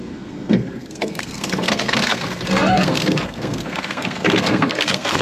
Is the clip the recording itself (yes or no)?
no